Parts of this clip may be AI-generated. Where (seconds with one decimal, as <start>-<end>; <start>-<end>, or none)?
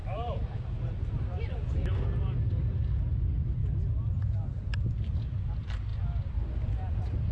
0.0-1.1; 3.6-4.9